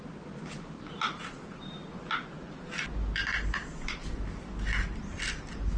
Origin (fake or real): real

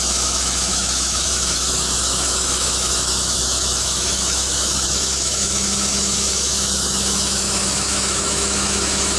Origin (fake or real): fake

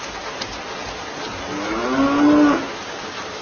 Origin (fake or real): real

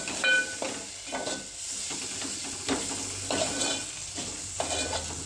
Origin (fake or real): real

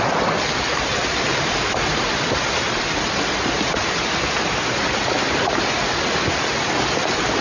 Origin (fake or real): real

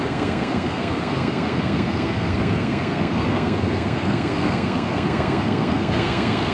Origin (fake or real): fake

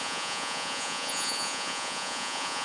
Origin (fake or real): fake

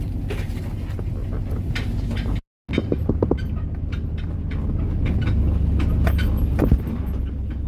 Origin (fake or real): real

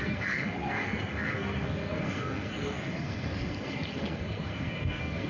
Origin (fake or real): fake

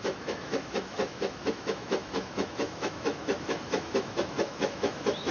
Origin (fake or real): fake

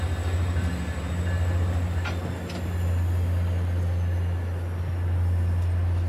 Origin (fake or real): real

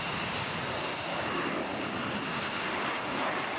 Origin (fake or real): real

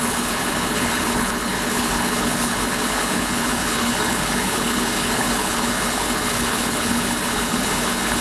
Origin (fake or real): fake